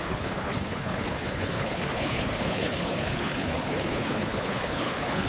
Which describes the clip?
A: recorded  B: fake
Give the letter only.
B